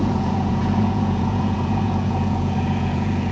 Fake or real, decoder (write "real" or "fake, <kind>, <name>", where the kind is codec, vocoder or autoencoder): fake, vocoder, Vocos